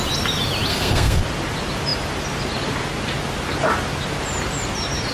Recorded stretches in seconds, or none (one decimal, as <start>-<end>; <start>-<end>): 0.0-0.7; 1.2-5.1